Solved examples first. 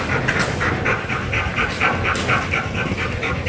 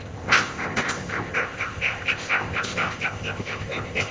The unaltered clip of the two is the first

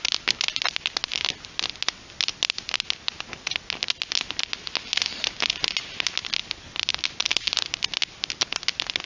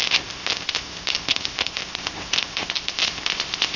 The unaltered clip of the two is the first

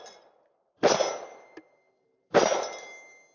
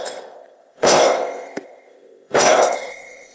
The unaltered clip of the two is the first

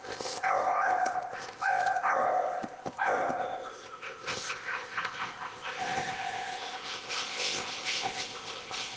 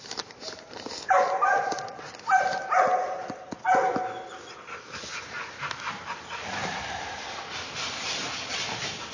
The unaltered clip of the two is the second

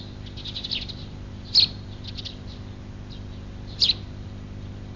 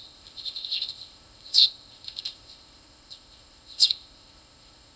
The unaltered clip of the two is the first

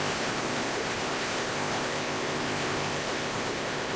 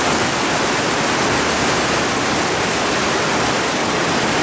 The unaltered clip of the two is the second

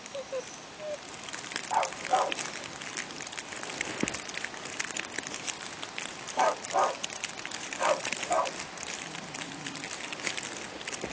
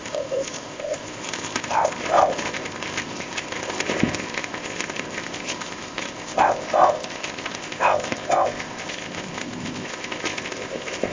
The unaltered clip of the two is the first